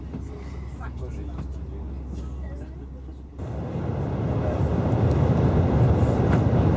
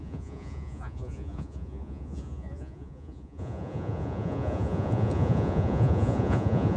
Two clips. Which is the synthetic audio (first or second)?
second